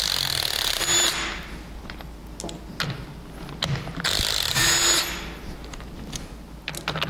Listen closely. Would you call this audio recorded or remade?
recorded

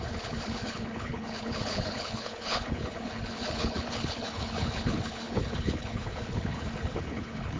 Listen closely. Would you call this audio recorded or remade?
remade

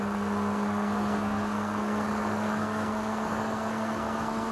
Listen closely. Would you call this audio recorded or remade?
remade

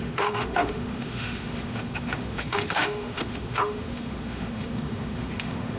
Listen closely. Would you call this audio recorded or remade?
remade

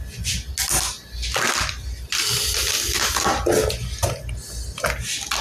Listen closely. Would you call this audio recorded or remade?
recorded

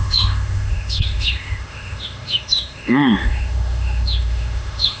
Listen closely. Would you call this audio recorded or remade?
remade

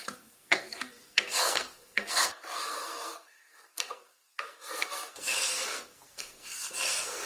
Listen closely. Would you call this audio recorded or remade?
remade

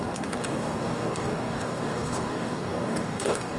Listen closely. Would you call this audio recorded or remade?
remade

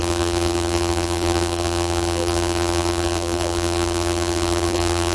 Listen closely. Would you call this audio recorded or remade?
remade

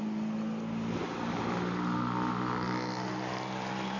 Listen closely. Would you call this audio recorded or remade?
recorded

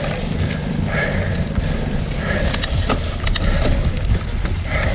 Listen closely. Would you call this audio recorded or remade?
recorded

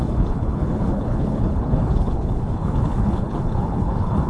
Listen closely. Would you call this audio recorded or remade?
remade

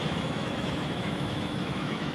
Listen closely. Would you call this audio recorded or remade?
remade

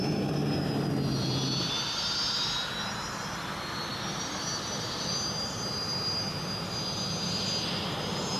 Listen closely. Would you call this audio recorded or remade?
recorded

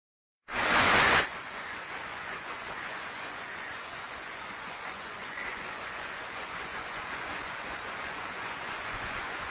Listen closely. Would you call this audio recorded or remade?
remade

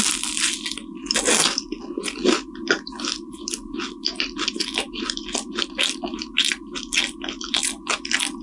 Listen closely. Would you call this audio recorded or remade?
recorded